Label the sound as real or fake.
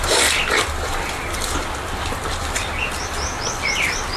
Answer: fake